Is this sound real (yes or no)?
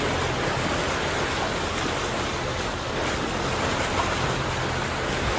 yes